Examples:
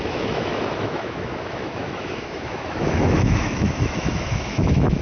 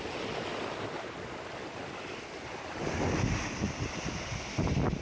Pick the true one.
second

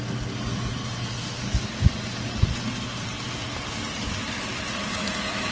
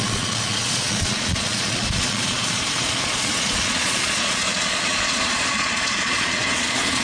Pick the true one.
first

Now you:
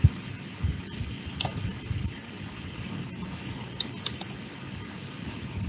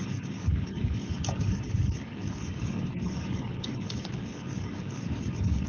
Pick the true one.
first